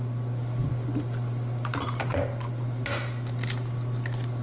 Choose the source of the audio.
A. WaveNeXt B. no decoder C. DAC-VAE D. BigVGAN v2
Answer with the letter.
B